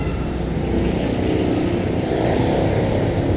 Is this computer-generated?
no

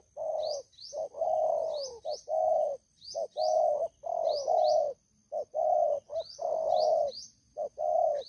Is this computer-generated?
no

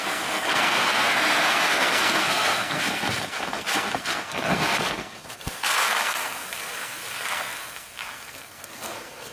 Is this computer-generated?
yes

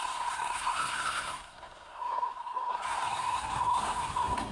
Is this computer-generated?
yes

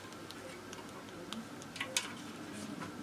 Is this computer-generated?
no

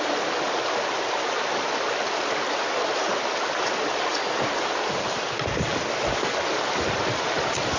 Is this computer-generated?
no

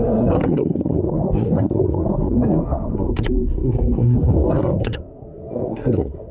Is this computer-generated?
yes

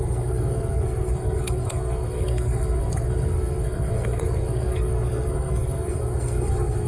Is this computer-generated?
yes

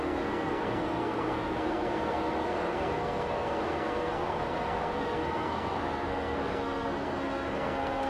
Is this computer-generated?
yes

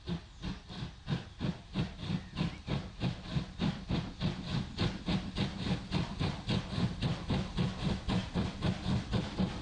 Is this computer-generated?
no